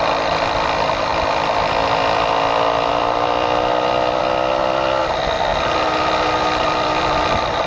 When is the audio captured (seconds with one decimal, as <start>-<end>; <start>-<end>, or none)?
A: 4.2-5.0; 5.5-6.7